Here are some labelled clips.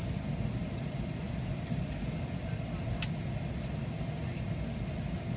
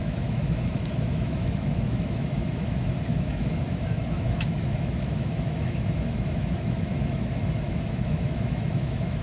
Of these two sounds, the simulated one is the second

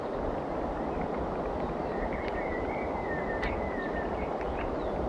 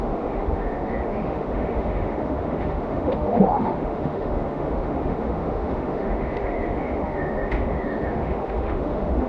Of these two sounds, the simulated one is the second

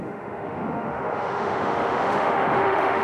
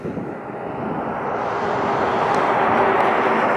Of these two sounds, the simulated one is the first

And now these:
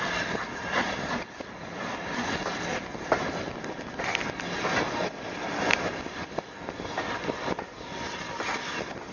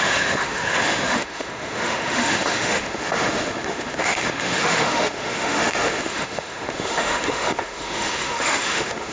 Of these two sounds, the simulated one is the second